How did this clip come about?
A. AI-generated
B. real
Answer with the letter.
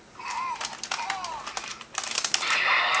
B